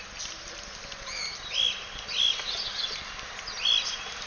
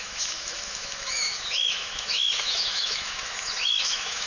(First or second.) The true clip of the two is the first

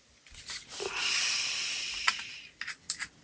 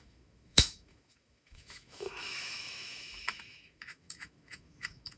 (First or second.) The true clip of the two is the first